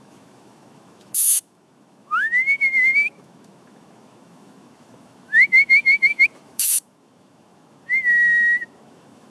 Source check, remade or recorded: remade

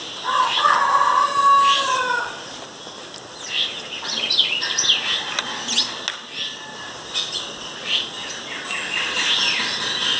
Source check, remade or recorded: recorded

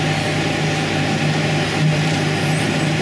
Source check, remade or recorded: recorded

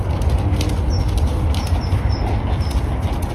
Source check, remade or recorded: recorded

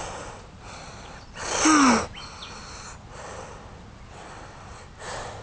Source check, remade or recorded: recorded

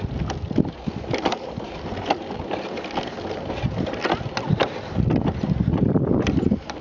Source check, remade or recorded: recorded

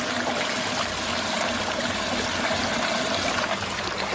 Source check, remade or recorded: recorded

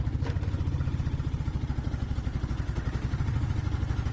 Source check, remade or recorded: recorded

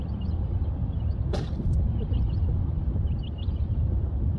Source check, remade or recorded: recorded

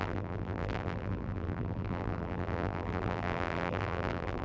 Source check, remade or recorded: remade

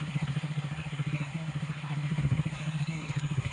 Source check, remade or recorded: remade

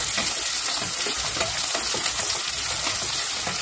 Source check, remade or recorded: recorded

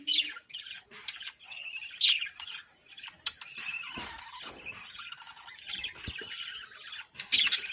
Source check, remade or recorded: recorded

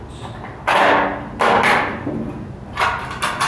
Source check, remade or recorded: recorded